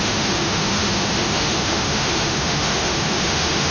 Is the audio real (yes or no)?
no